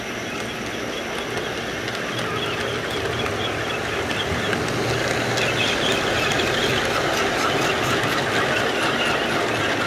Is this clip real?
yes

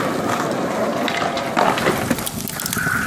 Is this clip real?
yes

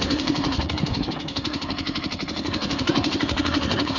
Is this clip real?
no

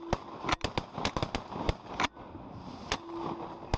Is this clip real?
yes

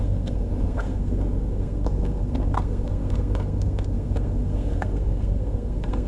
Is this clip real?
no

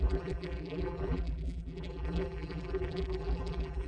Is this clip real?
no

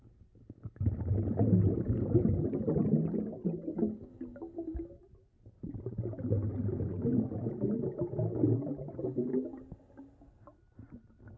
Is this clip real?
yes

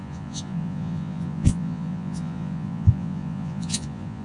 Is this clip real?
no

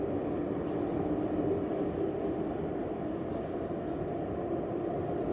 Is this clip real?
yes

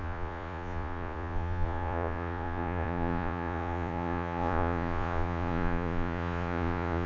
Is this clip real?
no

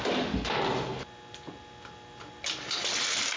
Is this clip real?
yes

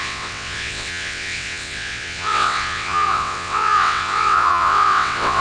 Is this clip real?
no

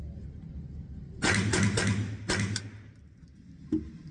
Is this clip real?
yes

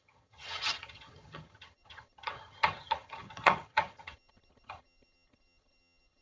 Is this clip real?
no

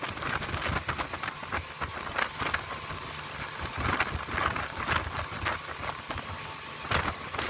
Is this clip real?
yes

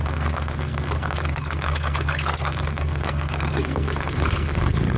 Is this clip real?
no